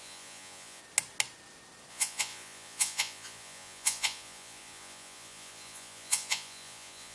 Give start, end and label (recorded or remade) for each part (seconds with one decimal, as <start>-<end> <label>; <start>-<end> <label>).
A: 0.0-0.8 remade; 0.8-1.9 recorded; 1.9-7.1 remade